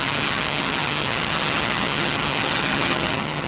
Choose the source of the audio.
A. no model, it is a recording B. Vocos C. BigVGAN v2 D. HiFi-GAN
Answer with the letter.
D